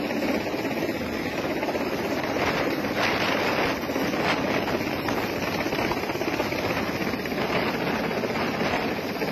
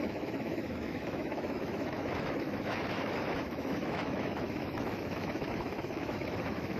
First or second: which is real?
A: first